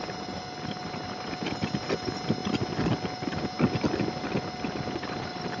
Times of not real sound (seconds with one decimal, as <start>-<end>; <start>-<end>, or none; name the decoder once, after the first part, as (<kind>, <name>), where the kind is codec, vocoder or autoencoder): 0.8-1.3 (vocoder, BigVGAN v2)